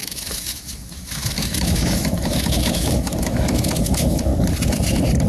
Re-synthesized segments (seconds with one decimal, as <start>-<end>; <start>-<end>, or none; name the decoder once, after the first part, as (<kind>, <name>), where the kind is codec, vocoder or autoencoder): 0.0-4.3 (autoencoder, DAC-VAE)

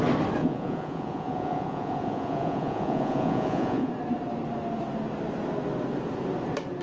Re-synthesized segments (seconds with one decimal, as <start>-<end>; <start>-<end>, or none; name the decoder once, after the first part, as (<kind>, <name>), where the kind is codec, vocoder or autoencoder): 0.4-3.9 (vocoder, Vocos)

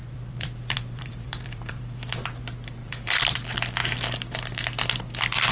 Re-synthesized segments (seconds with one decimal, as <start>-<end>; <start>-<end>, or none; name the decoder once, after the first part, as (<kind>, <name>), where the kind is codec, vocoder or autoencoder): 0.0-2.1 (vocoder, BigVGAN v2); 2.8-3.4

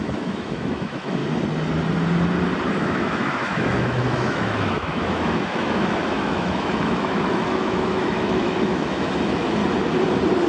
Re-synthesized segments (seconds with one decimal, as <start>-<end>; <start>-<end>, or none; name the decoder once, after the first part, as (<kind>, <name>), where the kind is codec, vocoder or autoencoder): 0.0-1.2 (autoencoder, DAC-VAE); 2.7-9.6

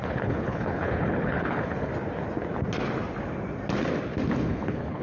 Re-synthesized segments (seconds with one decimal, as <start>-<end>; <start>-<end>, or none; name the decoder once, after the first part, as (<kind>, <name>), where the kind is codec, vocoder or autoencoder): 0.0-1.9 (codec, HILCodec); 4.4-5.0

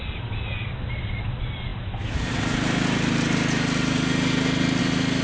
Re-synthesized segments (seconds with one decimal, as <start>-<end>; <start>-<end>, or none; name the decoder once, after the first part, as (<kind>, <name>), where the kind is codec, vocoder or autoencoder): none

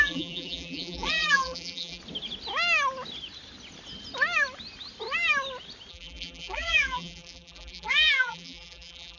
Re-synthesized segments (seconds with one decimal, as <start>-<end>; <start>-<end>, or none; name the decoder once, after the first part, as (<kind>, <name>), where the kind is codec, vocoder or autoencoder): 0.0-2.0 (vocoder, BigVGAN v2); 5.9-9.2